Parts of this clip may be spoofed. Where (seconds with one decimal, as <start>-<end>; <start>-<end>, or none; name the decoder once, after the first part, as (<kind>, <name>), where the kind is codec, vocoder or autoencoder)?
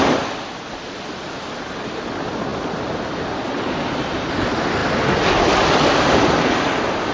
none